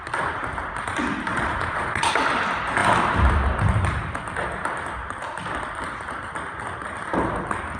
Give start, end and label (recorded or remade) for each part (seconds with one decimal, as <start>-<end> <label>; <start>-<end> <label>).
0.0-1.3 recorded; 1.3-2.1 remade; 2.1-7.8 recorded